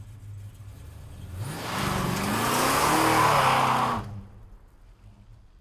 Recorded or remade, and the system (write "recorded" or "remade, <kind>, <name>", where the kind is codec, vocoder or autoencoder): recorded